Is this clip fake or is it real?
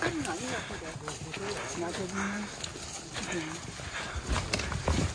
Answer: real